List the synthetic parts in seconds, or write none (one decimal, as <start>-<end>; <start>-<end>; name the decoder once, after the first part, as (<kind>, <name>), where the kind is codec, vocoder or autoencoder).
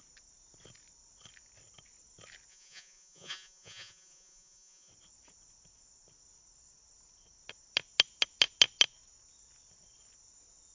2.5-4.9 (vocoder, Vocos)